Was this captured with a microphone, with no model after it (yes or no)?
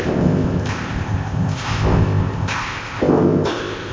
no